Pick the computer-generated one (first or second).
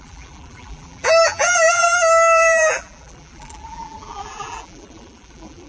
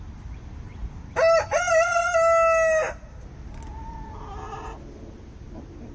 first